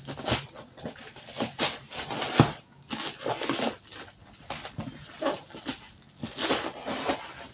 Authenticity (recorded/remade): recorded